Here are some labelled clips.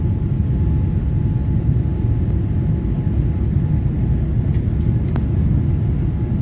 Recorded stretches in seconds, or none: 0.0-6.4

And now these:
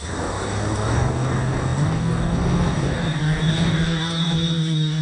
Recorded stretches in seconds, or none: none

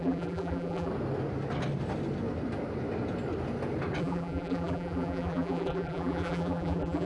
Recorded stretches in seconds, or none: 0.9-4.0